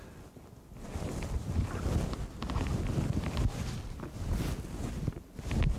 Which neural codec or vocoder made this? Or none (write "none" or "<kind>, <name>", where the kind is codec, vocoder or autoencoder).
none